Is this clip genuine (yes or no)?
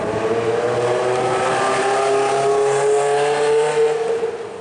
yes